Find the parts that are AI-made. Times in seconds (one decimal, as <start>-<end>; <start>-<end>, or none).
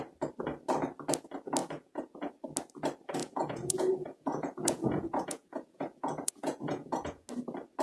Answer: 1.6-2.3; 3.2-7.3